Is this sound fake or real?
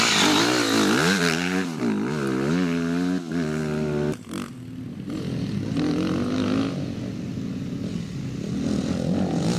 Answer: real